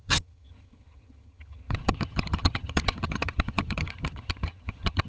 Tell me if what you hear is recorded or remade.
remade